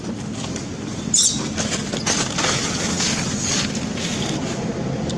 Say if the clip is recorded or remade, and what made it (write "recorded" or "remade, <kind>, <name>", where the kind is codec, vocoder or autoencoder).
recorded